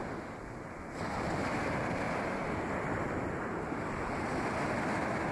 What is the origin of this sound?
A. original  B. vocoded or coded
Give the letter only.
A